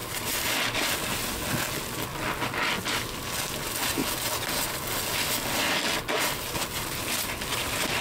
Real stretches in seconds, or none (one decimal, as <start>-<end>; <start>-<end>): 0.0-8.0